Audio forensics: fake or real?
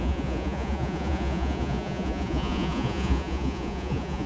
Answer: fake